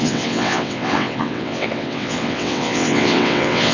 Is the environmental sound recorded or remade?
remade